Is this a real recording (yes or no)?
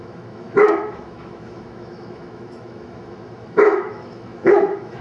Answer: no